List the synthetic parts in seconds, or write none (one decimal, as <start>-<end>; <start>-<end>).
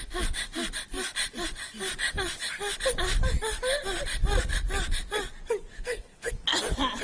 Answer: 5.7-6.3